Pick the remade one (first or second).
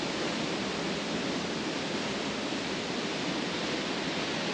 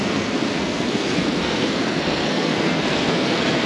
second